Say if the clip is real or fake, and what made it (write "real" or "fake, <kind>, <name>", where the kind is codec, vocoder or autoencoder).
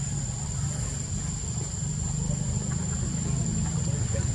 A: real